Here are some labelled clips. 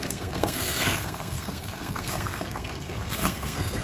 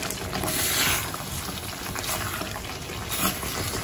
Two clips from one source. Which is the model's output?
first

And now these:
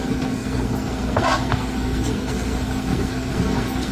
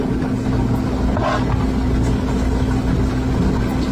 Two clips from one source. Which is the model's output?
first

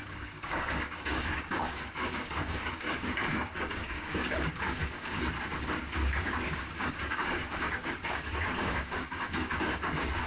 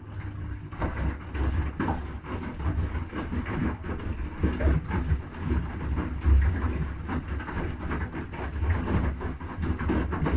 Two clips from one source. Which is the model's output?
first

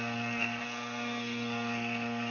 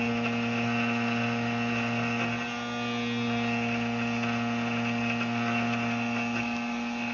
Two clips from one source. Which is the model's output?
first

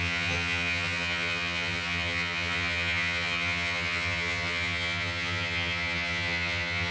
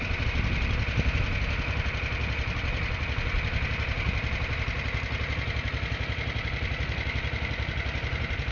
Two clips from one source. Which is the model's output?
first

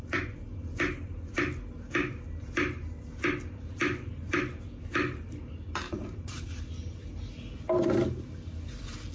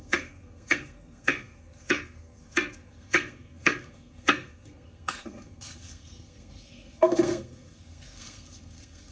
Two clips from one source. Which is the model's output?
second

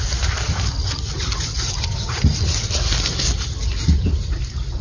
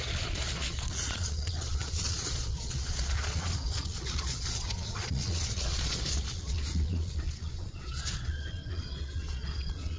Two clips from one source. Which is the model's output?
second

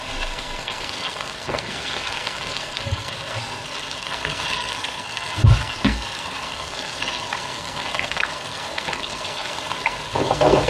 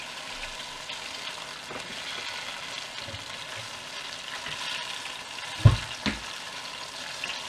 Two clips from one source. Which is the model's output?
first